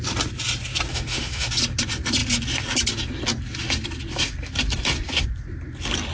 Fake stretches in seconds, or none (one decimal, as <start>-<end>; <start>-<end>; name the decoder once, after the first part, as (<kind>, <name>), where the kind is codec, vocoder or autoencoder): 0.9-1.5 (autoencoder, DAC-VAE)